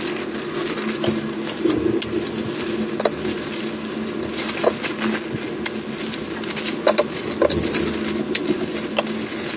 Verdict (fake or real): real